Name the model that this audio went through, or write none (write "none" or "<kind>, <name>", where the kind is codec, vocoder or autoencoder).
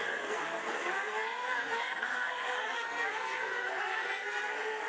codec, SNAC